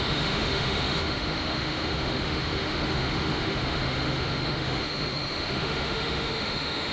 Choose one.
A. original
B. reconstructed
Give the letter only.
B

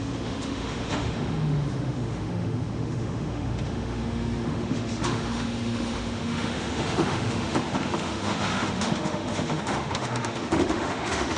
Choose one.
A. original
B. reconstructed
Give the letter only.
B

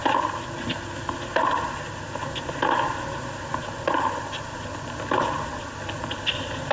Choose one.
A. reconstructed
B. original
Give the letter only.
B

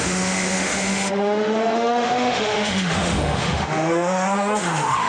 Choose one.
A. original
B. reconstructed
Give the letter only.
B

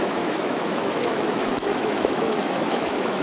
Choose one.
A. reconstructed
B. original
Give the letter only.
A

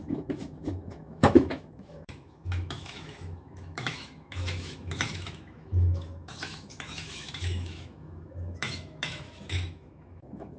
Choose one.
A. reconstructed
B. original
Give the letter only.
A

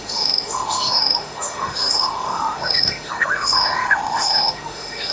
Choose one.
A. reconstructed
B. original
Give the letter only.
A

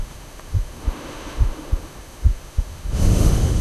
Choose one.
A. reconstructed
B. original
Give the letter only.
A